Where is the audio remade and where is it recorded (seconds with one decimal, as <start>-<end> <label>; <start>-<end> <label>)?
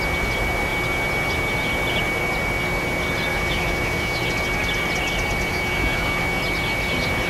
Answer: 0.0-3.3 recorded; 3.3-4.2 remade; 4.2-5.5 recorded; 5.5-6.4 remade; 6.4-7.3 recorded